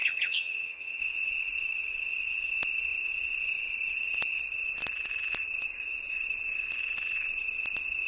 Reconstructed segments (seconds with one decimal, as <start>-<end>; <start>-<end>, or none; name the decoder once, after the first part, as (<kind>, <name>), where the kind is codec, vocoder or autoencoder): 0.0-1.0 (vocoder, HiFi-GAN)